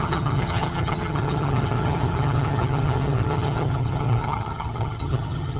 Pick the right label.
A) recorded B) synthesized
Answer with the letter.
B